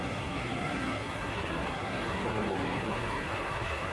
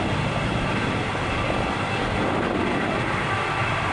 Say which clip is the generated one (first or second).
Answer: first